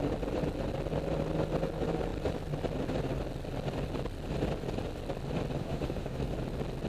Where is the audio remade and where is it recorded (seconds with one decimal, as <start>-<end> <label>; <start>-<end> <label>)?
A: 0.0-5.6 recorded; 5.6-6.2 remade; 6.2-6.9 recorded